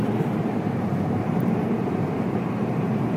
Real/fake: fake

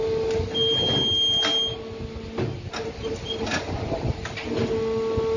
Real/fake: real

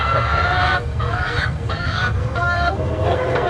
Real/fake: fake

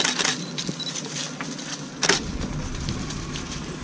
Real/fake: real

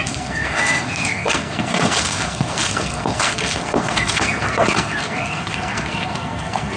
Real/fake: fake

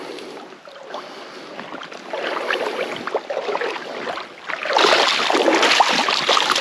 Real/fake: real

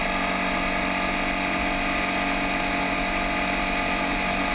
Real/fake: real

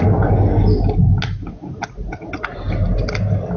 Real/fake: real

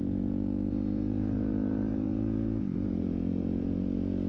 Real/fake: fake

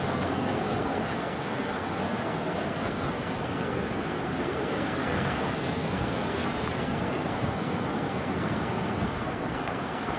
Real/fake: fake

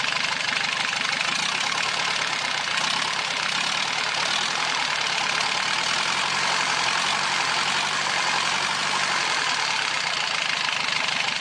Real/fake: real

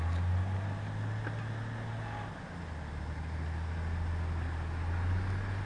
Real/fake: real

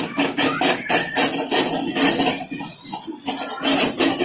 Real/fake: real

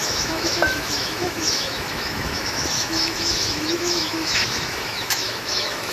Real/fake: fake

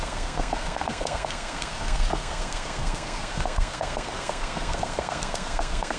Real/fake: fake